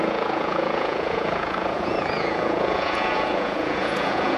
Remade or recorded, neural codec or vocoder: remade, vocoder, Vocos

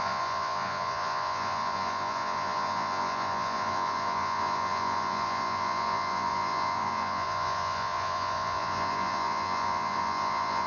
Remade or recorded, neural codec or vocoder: remade, vocoder, Vocos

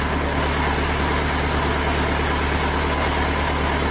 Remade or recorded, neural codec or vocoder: recorded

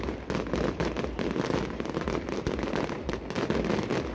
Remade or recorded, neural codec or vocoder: recorded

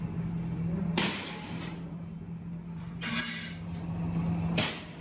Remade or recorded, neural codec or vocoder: recorded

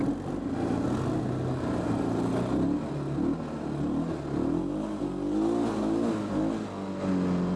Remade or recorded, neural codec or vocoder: recorded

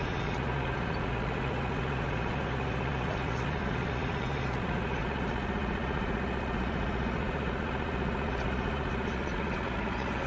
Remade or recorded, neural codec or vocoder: remade, vocoder, Vocos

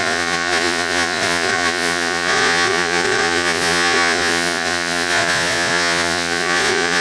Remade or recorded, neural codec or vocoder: remade, vocoder, Vocos